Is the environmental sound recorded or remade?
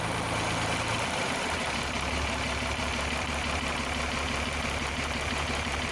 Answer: remade